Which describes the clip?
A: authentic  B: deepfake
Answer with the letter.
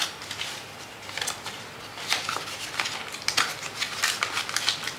A